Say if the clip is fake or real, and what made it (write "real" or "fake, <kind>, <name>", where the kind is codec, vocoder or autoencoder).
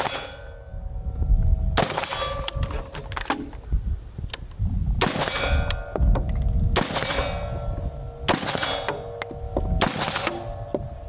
real